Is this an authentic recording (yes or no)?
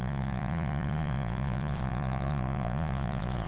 no